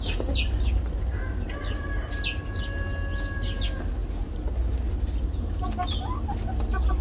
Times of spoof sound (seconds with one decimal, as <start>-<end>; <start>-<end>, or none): none